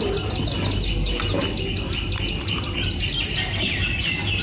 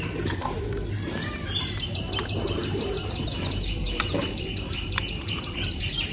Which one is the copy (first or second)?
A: second